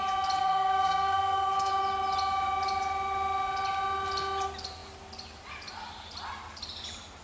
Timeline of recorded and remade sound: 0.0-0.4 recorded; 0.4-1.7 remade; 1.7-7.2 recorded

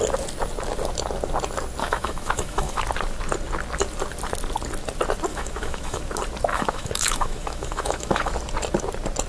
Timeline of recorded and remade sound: 0.0-1.8 recorded; 1.8-2.8 remade; 2.8-5.3 recorded; 5.3-6.0 remade; 6.0-6.5 recorded; 6.5-8.3 remade; 8.3-9.3 recorded

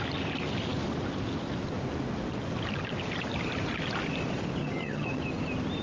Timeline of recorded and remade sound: 0.0-4.6 recorded; 4.6-5.2 remade; 5.2-5.8 recorded

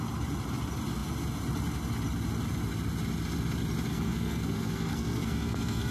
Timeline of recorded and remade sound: 0.0-3.9 recorded; 3.9-5.9 remade

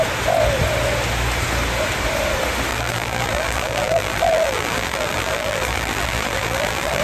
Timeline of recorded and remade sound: 0.0-2.7 recorded; 2.7-7.0 remade

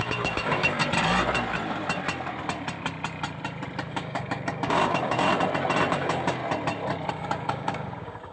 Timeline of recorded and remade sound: 0.0-0.8 remade; 0.8-3.9 recorded; 3.9-5.3 remade; 5.3-5.9 recorded; 5.9-6.4 remade; 6.4-7.1 recorded; 7.1-8.3 remade

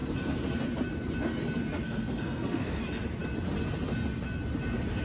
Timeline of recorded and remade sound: 0.0-1.8 recorded; 1.8-2.8 remade; 2.8-5.0 recorded

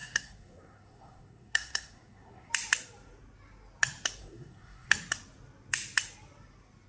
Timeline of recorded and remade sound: 0.0-2.5 remade; 2.5-4.2 recorded; 4.2-4.9 remade; 4.9-6.9 recorded